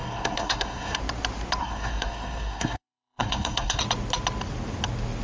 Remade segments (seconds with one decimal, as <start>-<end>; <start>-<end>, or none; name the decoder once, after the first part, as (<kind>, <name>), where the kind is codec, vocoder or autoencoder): 0.0-1.0 (codec, SNAC); 1.6-3.8